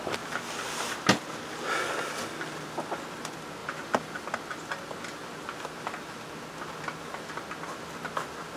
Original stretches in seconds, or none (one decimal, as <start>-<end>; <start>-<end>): 0.0-3.6; 4.3-8.6